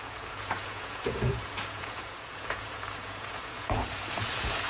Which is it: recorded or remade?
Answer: remade